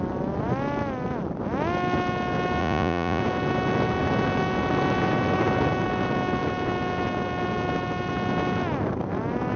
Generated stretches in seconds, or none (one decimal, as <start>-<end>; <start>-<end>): 2.6-3.2